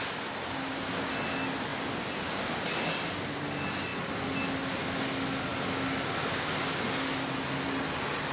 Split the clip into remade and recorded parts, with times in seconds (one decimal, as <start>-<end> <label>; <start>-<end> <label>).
0.0-8.3 recorded